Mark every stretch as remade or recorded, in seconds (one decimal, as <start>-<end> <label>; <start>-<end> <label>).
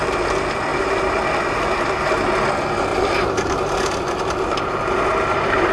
0.0-2.9 recorded; 2.9-5.7 remade